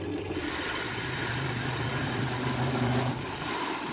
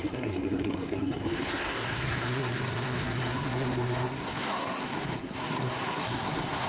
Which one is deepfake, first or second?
second